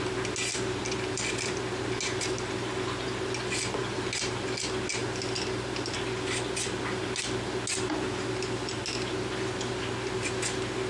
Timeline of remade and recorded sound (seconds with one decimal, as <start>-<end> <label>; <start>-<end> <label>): 0.0-10.9 recorded